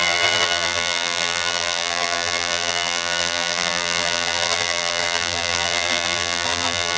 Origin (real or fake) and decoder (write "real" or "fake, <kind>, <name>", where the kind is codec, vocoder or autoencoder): fake, vocoder, BigVGAN v2